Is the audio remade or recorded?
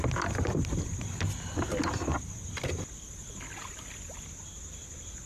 recorded